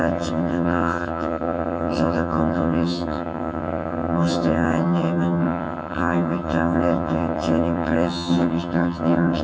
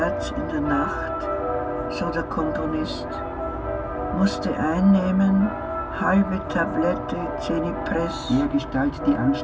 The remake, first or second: first